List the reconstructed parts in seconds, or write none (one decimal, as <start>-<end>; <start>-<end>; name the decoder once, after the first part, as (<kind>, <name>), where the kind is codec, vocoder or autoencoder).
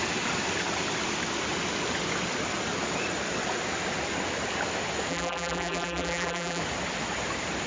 5.1-6.6 (vocoder, BigVGAN v2)